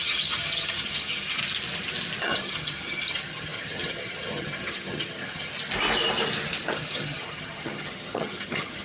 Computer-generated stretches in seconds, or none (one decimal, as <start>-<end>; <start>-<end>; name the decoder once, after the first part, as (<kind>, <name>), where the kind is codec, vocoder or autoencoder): 0.0-1.4 (vocoder, HiFi-GAN); 2.2-5.5; 6.7-8.8